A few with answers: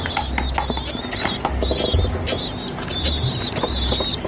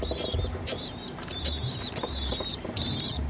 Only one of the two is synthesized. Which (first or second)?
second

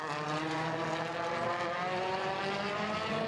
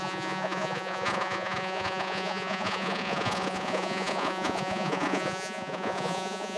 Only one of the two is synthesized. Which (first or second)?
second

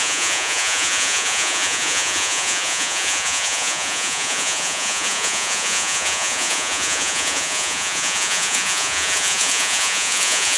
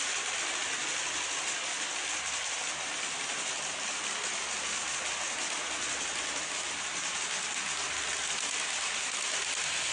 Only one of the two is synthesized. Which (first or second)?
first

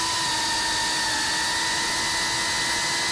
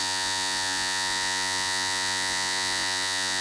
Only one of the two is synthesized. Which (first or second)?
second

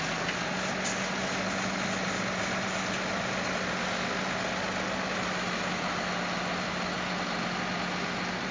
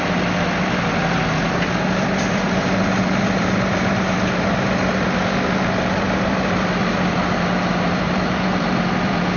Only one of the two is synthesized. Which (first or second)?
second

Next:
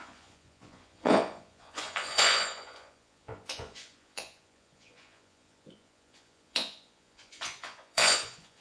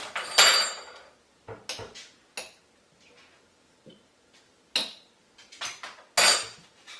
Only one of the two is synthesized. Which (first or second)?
first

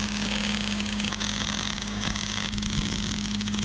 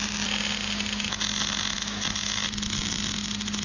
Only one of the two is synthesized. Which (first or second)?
first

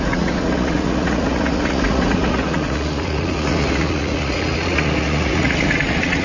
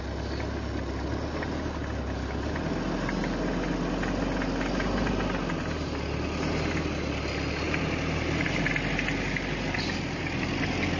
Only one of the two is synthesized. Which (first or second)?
first